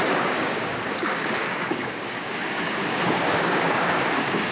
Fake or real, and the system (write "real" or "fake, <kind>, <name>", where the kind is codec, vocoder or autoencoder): fake, codec, DAC